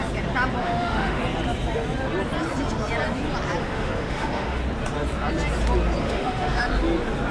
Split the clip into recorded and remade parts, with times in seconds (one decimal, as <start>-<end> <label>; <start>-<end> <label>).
0.0-0.6 recorded; 0.6-1.2 remade; 1.2-3.6 recorded; 3.6-4.6 remade; 4.6-6.0 recorded; 6.0-6.6 remade; 6.6-7.3 recorded